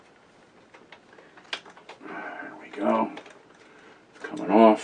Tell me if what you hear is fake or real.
real